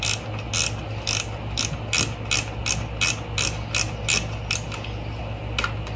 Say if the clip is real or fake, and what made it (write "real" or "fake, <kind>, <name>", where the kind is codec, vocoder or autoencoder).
real